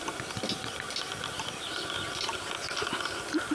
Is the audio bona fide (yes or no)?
yes